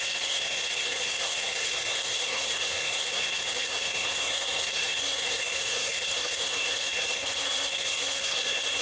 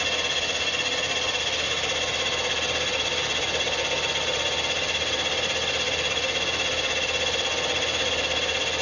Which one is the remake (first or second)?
first